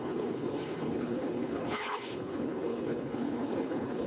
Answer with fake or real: fake